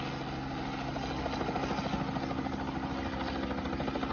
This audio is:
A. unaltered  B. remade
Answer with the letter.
A